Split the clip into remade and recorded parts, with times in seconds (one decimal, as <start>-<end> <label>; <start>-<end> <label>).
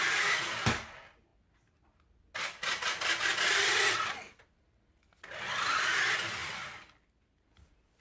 0.0-8.0 recorded